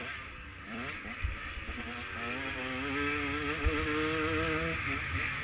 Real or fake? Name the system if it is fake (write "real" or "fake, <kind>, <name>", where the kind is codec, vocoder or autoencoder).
real